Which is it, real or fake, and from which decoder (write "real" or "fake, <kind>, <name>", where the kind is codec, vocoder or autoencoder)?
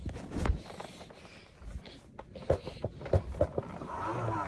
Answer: real